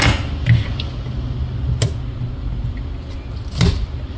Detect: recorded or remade recorded